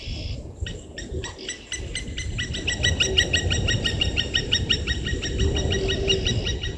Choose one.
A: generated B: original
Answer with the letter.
B